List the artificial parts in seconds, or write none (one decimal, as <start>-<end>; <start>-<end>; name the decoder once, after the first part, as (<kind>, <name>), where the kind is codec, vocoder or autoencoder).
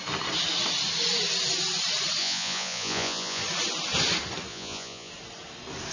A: 2.2-3.4 (vocoder, Vocos); 4.5-5.1